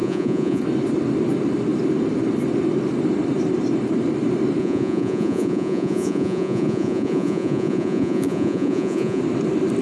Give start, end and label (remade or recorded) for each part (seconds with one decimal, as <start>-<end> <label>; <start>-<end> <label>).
0.0-0.6 remade; 0.6-4.6 recorded; 4.6-9.2 remade; 9.2-9.8 recorded